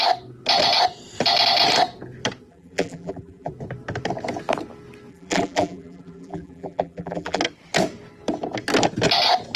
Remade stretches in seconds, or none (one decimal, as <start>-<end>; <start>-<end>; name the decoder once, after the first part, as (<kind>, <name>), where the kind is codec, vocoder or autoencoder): 2.5-3.5 (vocoder, BigVGAN v2); 5.1-7.4

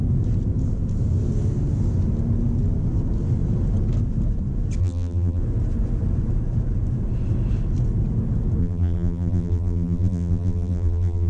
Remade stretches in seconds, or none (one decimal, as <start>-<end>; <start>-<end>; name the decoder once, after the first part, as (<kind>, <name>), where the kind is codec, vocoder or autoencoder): 4.8-5.4 (vocoder, BigVGAN v2); 8.6-11.3

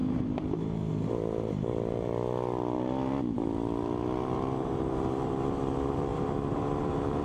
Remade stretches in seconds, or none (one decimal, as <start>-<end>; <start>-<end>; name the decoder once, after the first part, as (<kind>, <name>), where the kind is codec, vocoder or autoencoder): 0.0-7.2 (vocoder, BigVGAN v2)